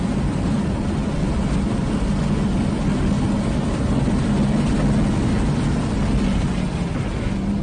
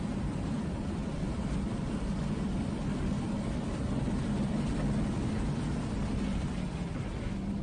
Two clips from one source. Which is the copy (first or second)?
second